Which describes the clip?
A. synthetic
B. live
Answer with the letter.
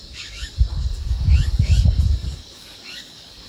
A